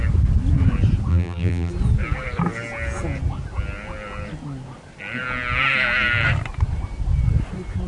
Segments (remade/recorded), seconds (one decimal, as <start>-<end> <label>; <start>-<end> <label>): 0.0-1.1 recorded; 1.1-1.7 remade; 1.7-7.9 recorded